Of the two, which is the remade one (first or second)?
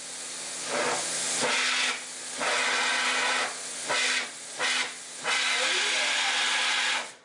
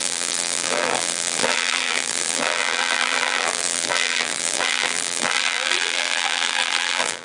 second